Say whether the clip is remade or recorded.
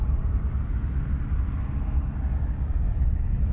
recorded